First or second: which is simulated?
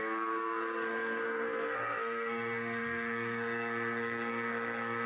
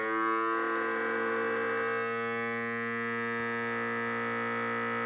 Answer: first